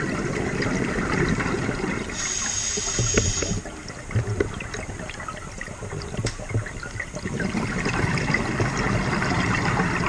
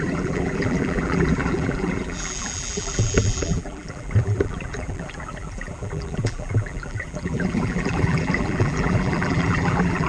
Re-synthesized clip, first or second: second